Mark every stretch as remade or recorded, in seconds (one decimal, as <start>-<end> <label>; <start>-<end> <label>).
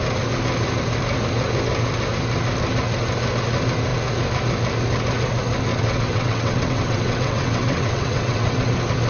0.0-5.7 recorded; 5.7-8.7 remade; 8.7-9.1 recorded